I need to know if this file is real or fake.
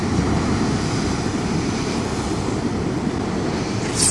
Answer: real